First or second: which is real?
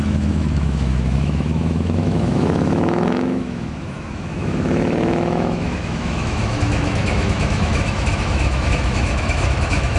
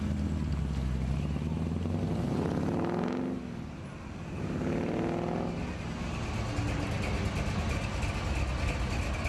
second